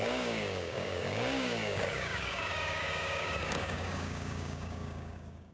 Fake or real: fake